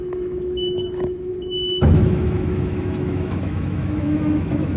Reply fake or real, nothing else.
fake